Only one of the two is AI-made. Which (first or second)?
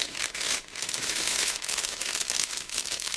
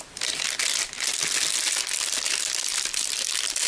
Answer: first